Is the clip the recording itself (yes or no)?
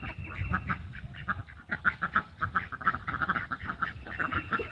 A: yes